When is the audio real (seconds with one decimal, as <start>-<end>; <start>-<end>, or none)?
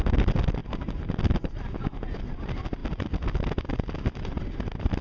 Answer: 0.0-5.0